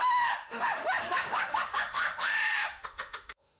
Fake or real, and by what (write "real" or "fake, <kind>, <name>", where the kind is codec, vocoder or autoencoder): fake, autoencoder, DAC-VAE